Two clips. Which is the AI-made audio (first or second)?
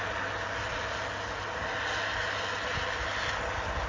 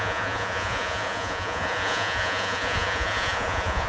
second